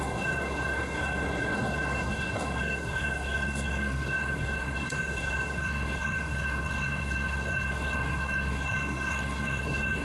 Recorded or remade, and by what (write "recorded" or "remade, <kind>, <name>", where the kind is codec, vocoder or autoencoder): remade, codec, SNAC